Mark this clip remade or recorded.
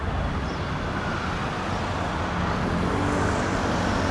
recorded